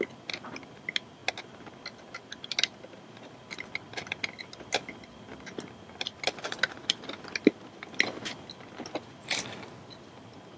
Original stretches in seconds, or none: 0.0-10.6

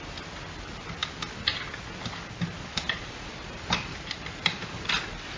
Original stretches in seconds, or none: 0.0-2.7; 4.9-5.4

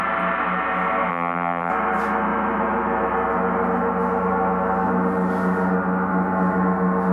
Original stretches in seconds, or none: 0.0-1.1; 1.7-7.1

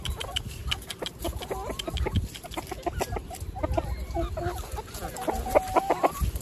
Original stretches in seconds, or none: 0.0-6.4

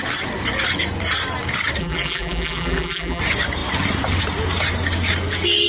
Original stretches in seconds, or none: 0.0-1.8; 3.2-5.7

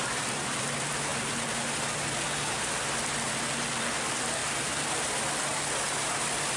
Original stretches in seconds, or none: 1.1-3.3; 4.4-6.0

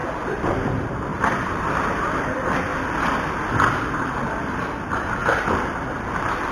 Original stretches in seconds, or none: 1.1-1.6; 2.7-3.6; 5.2-6.5

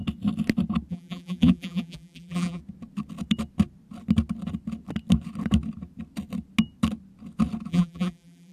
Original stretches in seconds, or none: 0.0-0.9; 2.6-7.7